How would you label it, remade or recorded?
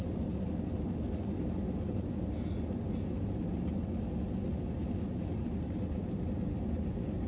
recorded